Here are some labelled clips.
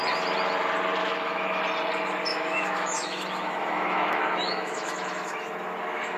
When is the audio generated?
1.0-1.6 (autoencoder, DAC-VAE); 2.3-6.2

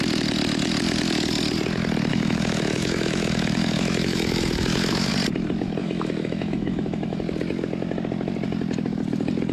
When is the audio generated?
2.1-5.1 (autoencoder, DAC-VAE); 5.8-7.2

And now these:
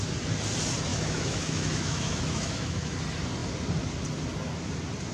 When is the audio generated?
0.9-2.9 (autoencoder, DAC-VAE)

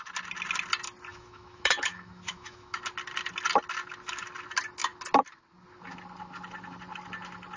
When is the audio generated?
1.1-2.8 (autoencoder, DAC-VAE)

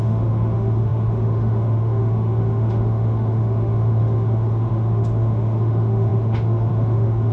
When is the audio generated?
0.0-7.3 (autoencoder, DAC-VAE)

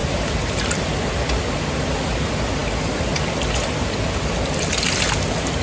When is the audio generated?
none

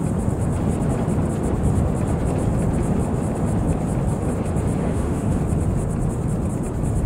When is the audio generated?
4.8-5.4 (autoencoder, DAC-VAE)

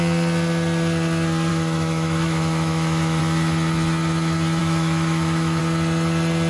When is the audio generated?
1.5-3.2 (autoencoder, DAC-VAE); 4.6-5.6